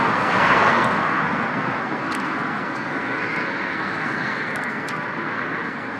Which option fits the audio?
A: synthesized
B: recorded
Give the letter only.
A